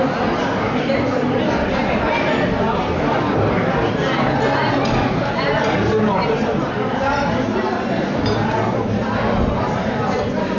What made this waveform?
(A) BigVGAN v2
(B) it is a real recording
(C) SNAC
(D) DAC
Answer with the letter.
B